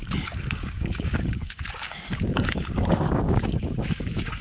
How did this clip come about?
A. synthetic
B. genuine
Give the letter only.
A